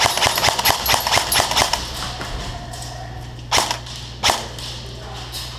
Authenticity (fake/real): real